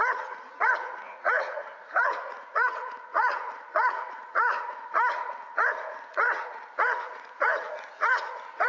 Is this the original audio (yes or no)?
no